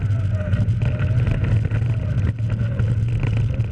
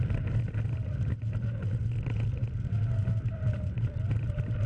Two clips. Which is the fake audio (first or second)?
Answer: second